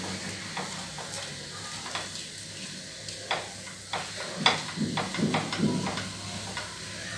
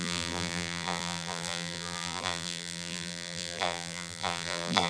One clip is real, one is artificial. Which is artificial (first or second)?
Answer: second